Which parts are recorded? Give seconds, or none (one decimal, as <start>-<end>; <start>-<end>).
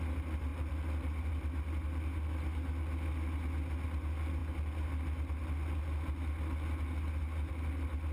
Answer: 0.0-8.1